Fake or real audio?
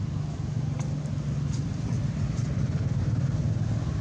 real